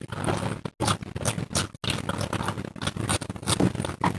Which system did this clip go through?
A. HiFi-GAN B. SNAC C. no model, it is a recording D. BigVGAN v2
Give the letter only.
C